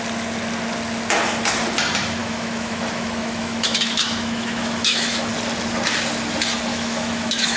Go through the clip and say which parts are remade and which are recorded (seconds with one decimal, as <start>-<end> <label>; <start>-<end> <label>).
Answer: 0.0-2.2 recorded; 2.2-5.3 remade; 5.3-6.7 recorded; 6.7-7.6 remade